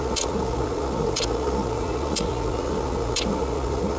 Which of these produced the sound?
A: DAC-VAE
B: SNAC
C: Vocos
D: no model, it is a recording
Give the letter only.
C